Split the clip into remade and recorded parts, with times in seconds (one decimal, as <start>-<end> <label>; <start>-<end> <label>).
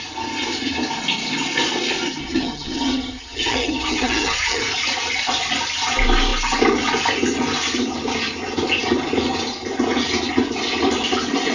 0.0-2.2 recorded; 2.2-4.6 remade; 4.6-11.5 recorded